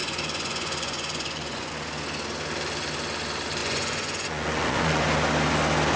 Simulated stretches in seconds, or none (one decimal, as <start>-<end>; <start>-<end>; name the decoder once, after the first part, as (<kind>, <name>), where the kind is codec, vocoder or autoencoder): 0.0-1.7 (vocoder, Vocos); 3.6-5.0